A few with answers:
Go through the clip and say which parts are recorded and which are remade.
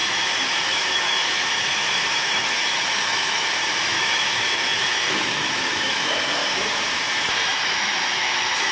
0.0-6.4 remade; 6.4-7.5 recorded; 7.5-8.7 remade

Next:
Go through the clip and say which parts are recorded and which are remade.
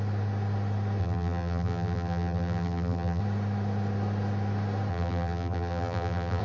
0.0-1.0 recorded; 1.0-3.2 remade; 3.2-4.9 recorded; 4.9-6.4 remade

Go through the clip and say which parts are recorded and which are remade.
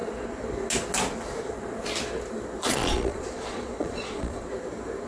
0.0-2.6 recorded; 2.6-4.5 remade; 4.5-5.1 recorded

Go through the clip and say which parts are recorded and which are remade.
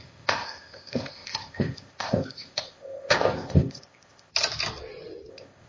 0.0-4.3 remade; 4.3-5.3 recorded; 5.3-5.7 remade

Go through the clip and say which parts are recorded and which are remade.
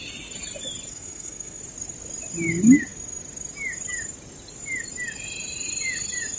0.0-0.9 recorded; 0.9-1.6 remade; 1.6-6.4 recorded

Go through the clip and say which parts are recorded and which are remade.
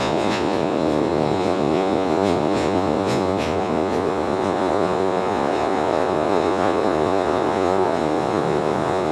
0.0-9.1 remade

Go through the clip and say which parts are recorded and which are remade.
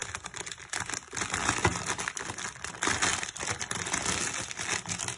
0.0-5.2 recorded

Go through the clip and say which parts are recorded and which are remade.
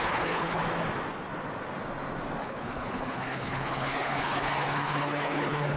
0.0-0.6 remade; 0.6-2.4 recorded; 2.4-5.8 remade